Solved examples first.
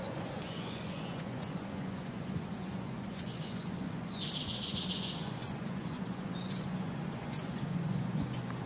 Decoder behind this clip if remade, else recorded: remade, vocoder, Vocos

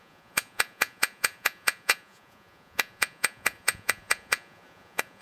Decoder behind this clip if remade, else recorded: remade, vocoder, Vocos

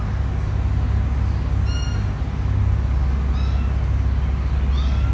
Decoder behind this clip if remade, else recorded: recorded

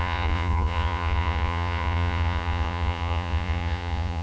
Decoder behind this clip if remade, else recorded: remade, vocoder, Vocos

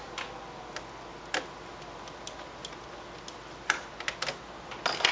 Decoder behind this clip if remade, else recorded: recorded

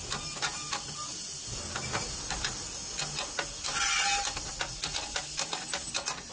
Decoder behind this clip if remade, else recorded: recorded